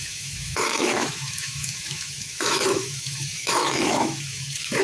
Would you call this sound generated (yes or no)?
yes